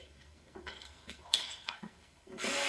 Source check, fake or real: fake